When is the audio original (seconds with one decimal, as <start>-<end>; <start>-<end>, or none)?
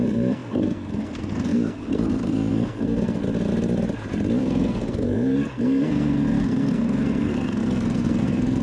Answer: 3.2-4.4